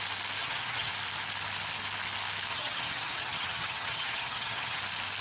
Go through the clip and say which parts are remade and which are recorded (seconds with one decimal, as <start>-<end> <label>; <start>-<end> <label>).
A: 0.0-0.4 recorded; 0.4-0.9 remade; 0.9-2.5 recorded; 2.5-4.8 remade; 4.8-5.2 recorded